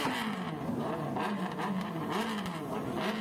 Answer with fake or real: real